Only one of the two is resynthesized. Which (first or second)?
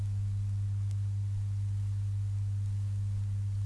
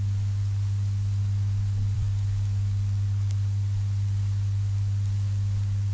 second